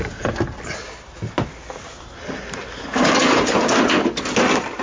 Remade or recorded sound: recorded